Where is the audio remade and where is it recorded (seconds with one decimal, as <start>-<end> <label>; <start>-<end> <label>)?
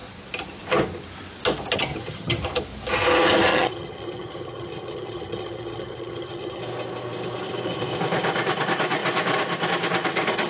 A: 0.0-1.9 recorded; 1.9-2.4 remade; 2.4-3.5 recorded; 3.5-6.6 remade; 6.6-10.5 recorded